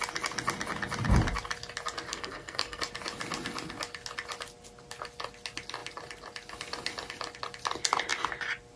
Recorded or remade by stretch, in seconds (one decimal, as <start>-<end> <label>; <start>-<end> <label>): 0.0-2.1 recorded; 2.1-2.8 remade; 2.8-8.8 recorded